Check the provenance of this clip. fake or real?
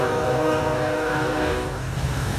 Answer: fake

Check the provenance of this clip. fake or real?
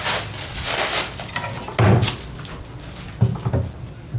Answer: real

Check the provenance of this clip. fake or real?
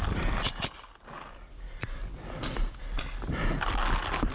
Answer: real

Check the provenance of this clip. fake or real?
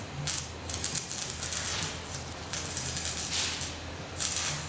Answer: real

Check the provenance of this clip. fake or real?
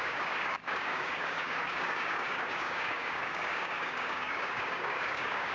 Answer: fake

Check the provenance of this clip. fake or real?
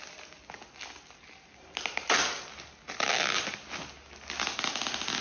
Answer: real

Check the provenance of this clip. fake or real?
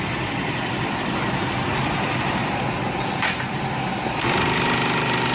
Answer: real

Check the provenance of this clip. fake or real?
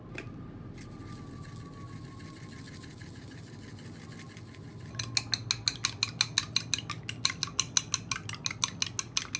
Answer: real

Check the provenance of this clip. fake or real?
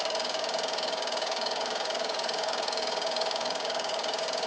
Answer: fake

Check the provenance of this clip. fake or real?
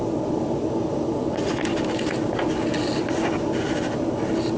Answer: real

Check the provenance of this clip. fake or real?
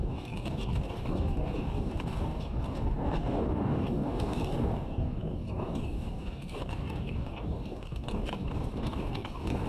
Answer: fake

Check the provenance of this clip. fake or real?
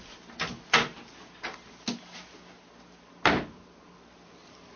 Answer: real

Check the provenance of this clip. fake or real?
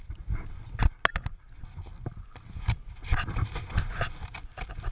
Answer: real